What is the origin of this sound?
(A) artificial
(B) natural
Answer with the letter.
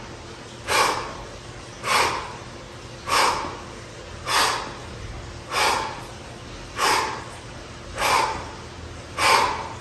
B